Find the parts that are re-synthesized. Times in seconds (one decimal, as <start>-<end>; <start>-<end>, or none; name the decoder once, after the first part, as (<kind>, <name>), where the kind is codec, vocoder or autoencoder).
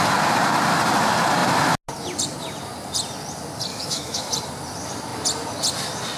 3.7-4.3 (autoencoder, DAC-VAE)